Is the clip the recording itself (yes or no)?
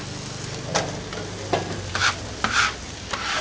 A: yes